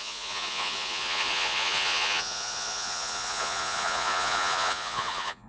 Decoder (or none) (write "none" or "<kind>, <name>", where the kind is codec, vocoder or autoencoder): vocoder, Vocos